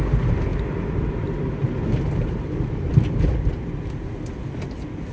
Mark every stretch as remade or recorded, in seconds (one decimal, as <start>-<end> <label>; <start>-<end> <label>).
0.0-5.1 recorded